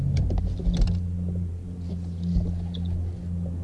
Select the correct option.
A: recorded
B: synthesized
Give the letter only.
A